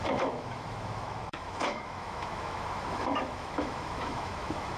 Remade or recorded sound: remade